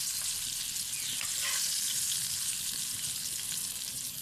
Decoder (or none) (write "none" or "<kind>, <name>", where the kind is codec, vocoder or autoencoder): none